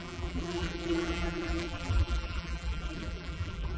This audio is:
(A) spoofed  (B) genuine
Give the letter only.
A